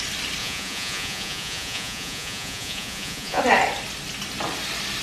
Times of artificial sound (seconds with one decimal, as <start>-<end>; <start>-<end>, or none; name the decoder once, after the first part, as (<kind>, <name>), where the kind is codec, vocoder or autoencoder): 0.4-3.4 (vocoder, Vocos)